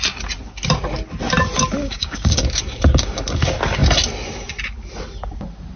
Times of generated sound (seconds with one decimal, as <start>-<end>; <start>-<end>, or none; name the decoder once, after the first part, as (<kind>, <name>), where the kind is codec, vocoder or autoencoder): 1.8-2.4 (codec, DAC)